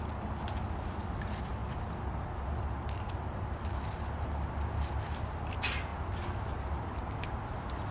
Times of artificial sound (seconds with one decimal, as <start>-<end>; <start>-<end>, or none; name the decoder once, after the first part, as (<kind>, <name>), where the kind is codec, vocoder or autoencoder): none